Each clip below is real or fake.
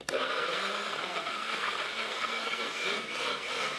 fake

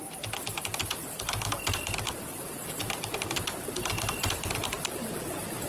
real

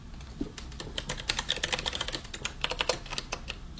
real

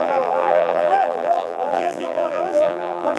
fake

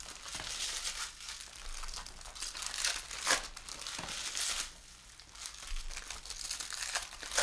real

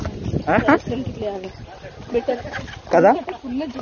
real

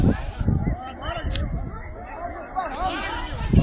real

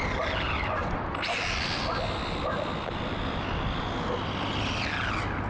real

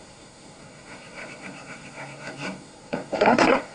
fake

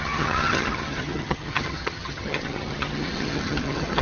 fake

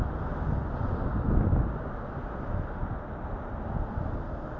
real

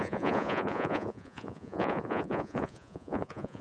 fake